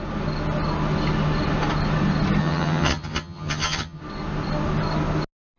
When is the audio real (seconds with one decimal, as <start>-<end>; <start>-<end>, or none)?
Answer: 0.0-2.4; 4.0-5.6

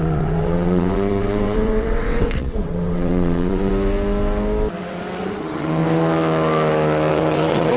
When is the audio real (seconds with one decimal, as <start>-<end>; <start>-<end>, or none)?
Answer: 3.7-4.8; 5.8-7.1

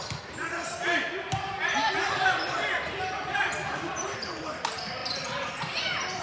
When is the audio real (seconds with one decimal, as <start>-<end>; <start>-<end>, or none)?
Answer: none

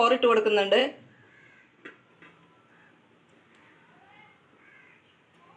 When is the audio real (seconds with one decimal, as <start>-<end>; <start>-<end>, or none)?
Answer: 0.0-0.8; 2.1-5.6

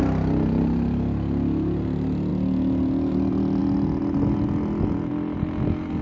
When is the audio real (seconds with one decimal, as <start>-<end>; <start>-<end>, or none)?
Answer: 0.0-6.0

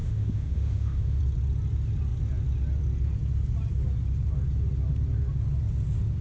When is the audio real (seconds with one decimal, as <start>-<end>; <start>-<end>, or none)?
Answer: 1.2-6.2